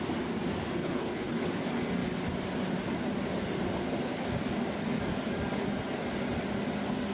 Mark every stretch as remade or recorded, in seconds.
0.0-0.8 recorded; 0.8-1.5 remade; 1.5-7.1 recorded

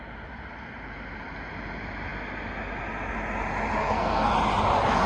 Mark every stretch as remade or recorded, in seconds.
0.0-3.8 recorded; 3.8-4.3 remade; 4.3-5.1 recorded

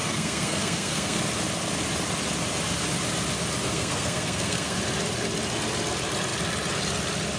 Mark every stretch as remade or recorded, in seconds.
0.0-1.2 remade; 1.2-3.7 recorded; 3.7-4.8 remade; 4.8-7.4 recorded